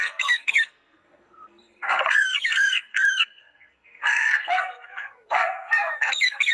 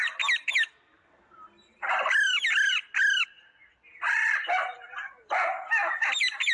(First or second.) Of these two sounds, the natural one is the second